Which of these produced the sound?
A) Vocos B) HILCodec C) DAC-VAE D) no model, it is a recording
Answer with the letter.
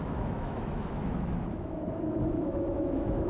C